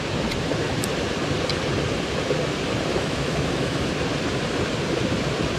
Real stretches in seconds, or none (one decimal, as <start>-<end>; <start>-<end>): 0.0-2.9; 3.9-5.6